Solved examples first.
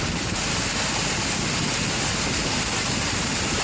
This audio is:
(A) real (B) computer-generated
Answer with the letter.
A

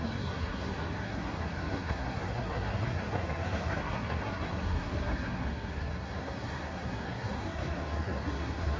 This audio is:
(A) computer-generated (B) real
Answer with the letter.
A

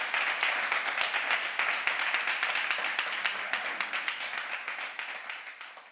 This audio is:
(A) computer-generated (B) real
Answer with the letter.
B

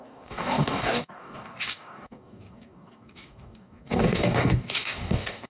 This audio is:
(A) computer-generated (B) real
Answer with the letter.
A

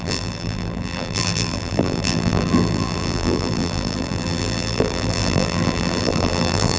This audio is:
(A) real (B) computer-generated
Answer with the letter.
B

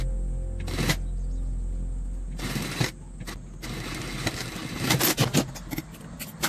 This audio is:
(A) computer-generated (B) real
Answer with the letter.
B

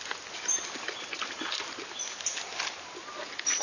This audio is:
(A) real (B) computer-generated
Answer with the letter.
A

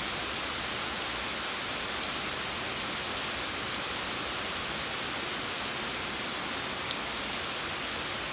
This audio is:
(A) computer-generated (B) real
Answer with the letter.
B